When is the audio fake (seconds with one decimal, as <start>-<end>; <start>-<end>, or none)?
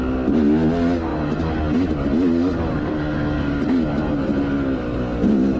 none